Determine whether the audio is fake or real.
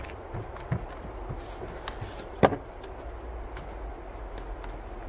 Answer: real